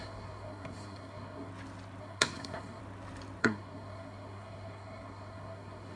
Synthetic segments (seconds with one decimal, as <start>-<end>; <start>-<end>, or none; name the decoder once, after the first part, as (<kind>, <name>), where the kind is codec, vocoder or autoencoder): 0.0-1.5 (codec, SNAC); 2.0-2.8; 3.4-6.0